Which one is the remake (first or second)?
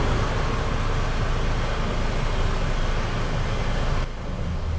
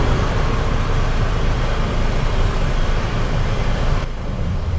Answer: second